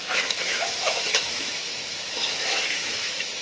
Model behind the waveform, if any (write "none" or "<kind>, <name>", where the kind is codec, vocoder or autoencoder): autoencoder, DAC-VAE